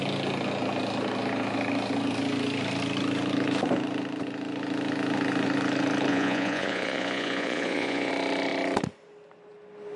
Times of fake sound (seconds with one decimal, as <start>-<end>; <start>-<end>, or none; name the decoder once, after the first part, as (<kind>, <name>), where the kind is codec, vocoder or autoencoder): 6.1-8.1 (vocoder, Vocos)